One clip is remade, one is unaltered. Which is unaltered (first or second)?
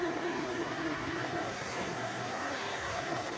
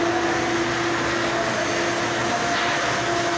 second